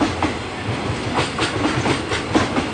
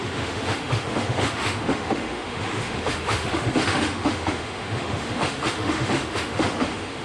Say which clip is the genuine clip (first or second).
first